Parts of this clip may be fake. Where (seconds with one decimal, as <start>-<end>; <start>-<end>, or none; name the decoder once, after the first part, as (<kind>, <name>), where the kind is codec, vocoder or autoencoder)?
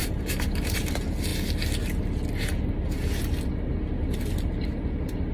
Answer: 0.0-0.9 (vocoder, BigVGAN v2)